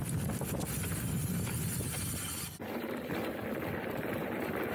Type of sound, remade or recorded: remade